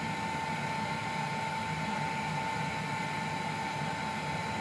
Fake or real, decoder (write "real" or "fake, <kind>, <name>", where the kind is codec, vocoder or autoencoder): real